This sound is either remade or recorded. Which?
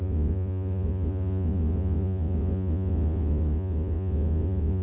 remade